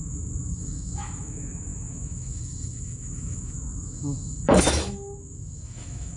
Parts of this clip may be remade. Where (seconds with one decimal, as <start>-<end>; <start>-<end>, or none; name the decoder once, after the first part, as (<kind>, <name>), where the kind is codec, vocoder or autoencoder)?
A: 0.0-6.2 (autoencoder, DAC-VAE)